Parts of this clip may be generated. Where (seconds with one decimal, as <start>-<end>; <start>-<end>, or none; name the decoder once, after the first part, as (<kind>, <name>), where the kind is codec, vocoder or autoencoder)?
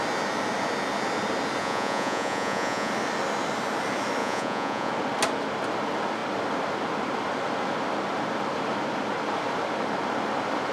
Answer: 1.6-2.9 (vocoder, Vocos); 4.2-4.9